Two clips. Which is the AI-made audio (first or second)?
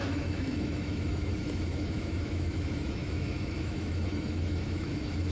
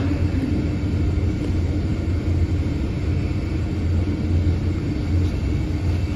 first